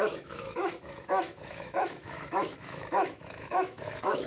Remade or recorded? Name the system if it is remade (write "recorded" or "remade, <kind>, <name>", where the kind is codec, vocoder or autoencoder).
remade, autoencoder, DAC-VAE